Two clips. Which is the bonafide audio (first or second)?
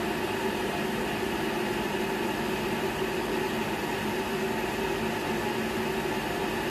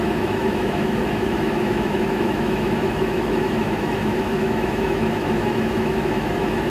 first